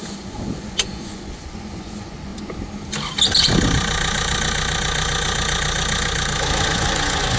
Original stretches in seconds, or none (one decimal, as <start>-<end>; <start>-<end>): 2.3-6.7